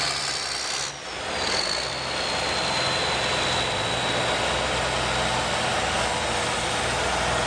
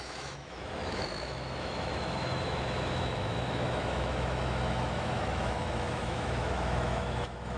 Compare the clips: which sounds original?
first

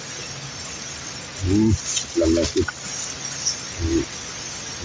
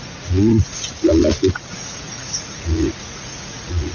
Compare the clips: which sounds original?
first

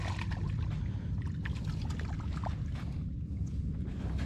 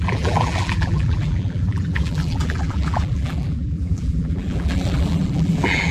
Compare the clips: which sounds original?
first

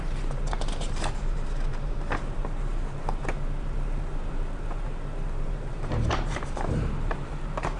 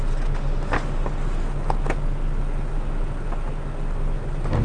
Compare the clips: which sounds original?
second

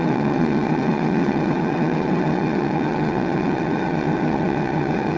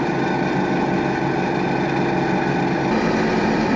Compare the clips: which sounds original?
second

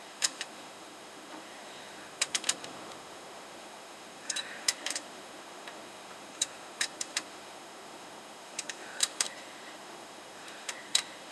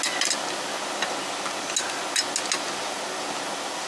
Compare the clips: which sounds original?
second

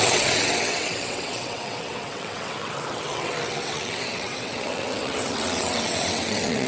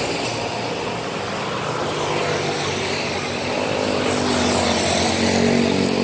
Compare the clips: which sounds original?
second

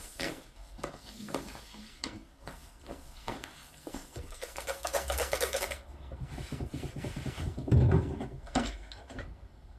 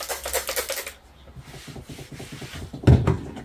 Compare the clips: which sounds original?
second